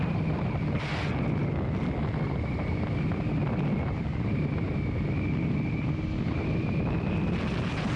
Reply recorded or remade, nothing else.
recorded